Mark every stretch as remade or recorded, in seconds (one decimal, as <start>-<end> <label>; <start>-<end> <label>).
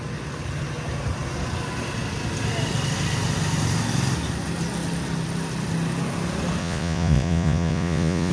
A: 0.0-6.6 recorded; 6.6-8.3 remade